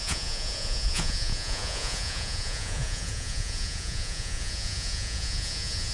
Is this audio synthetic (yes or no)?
yes